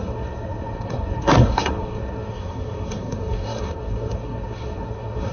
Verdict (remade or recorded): remade